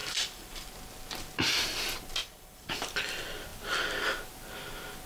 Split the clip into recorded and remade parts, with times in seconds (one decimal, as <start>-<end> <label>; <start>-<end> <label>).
0.0-0.7 remade; 0.7-2.2 recorded; 2.2-2.7 remade; 2.7-5.1 recorded